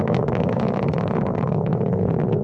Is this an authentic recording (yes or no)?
no